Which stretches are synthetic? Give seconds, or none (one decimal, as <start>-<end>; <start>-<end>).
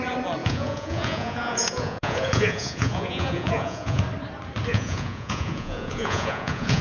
0.4-4.0; 4.7-6.8